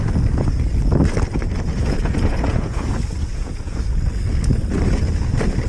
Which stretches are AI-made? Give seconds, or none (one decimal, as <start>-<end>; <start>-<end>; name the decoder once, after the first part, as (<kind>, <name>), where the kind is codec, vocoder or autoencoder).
1.7-2.9 (vocoder, Vocos); 3.3-3.8